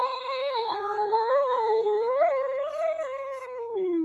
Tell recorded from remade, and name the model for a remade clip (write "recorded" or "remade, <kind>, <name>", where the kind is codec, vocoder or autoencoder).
remade, codec, SNAC